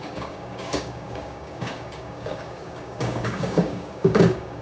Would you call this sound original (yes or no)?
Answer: no